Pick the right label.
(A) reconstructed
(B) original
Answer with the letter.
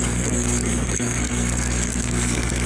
A